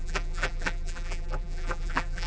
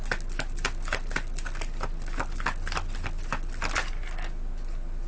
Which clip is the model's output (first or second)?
first